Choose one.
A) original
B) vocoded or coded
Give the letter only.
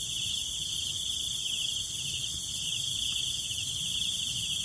A